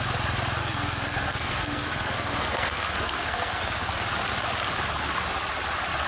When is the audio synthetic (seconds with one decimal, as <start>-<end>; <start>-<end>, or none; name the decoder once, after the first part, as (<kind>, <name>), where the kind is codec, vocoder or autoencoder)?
0.6-3.6 (codec, SNAC)